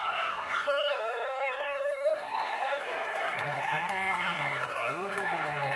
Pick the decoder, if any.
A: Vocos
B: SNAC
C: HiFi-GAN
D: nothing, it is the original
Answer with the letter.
B